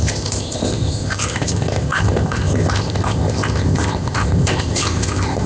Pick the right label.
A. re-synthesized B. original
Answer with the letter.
A